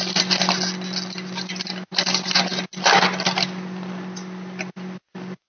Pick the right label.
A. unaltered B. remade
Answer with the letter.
A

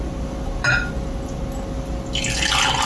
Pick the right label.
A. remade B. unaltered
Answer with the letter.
B